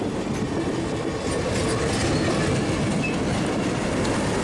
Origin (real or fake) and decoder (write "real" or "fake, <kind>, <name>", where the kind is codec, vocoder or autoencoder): real